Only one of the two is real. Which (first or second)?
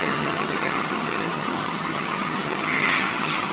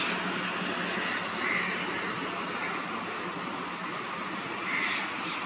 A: second